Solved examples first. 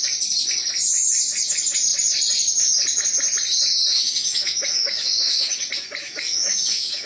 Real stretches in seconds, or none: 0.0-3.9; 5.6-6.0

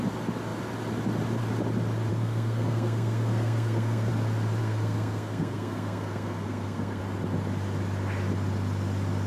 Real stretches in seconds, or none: 0.0-2.1; 4.1-4.6; 7.0-9.3

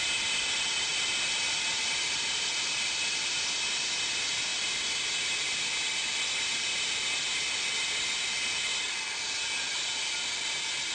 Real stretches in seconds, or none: 0.0-10.9